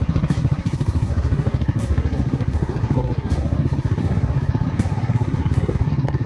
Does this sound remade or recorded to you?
remade